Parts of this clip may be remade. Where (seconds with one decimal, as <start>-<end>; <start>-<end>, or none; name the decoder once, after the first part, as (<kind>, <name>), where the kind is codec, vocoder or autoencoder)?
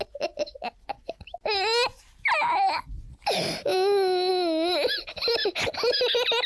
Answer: none